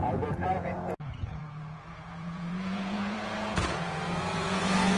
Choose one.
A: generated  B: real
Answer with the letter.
A